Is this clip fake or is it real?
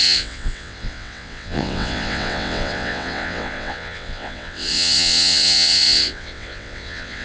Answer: fake